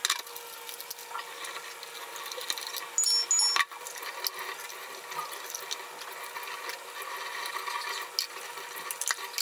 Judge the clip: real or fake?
real